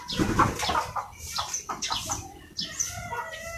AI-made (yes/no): no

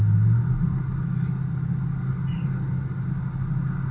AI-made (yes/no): no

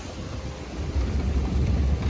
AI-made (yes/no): no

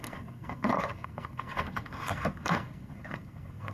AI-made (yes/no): yes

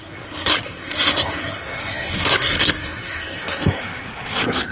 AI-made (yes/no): yes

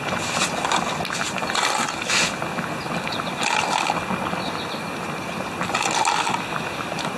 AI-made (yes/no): no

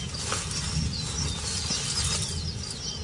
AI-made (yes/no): no